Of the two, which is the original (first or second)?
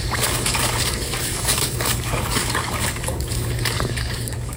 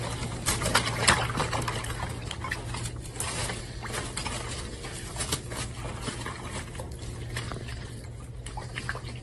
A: second